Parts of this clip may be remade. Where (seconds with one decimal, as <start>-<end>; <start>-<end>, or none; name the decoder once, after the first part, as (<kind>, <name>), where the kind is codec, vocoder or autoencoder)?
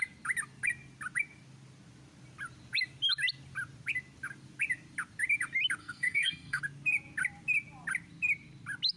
5.8-6.6 (codec, SNAC)